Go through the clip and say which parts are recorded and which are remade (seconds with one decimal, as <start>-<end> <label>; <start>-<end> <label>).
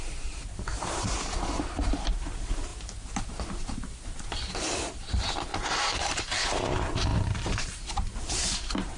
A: 0.0-2.7 remade; 2.7-3.3 recorded; 3.3-9.0 remade